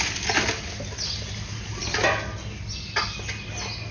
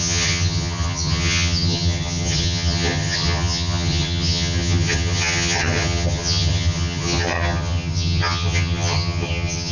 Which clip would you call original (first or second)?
first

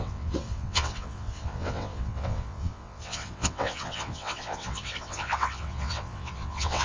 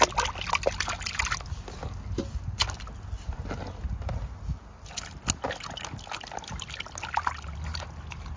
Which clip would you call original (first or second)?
second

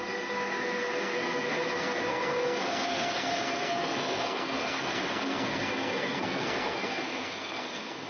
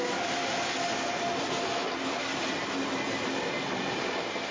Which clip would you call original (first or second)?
second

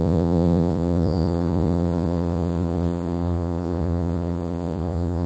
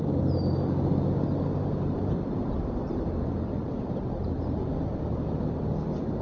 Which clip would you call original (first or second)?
second